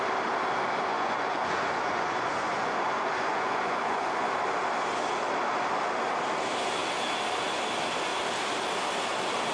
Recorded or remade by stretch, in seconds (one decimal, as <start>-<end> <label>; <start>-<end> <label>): 0.0-0.9 recorded; 0.9-4.3 remade; 4.3-9.5 recorded